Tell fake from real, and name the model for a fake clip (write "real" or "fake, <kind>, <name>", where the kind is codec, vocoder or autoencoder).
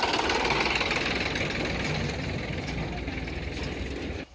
real